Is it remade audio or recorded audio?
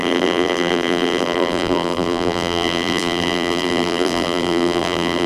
remade